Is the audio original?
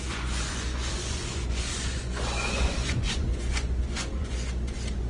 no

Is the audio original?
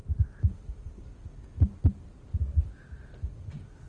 yes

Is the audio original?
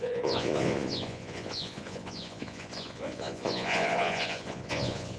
no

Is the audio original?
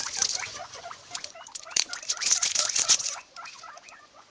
no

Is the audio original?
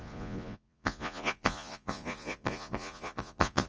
no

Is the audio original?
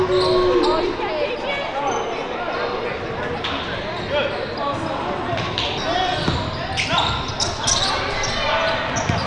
yes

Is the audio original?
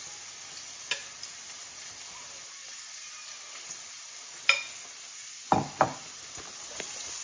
yes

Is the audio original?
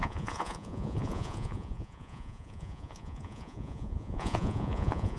no